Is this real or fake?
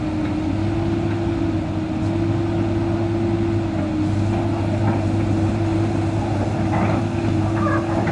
real